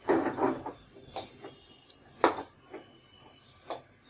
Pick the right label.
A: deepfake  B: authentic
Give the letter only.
B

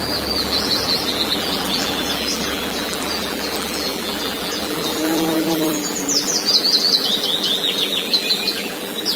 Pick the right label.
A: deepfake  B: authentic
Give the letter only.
A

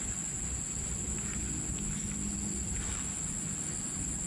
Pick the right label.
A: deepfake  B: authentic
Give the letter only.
B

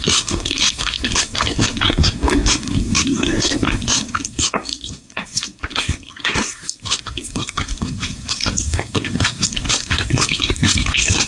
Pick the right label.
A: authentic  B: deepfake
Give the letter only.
B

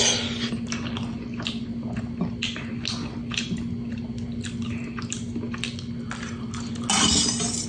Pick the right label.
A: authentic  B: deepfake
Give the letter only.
A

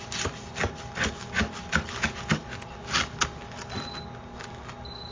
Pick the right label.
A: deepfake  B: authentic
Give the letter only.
B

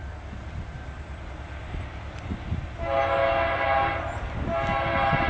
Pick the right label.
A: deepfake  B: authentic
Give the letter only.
B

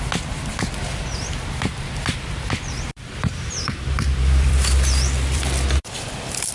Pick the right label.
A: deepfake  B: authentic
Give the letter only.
A